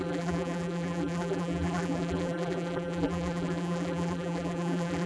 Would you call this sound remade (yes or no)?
yes